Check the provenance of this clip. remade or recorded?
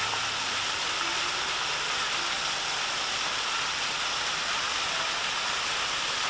recorded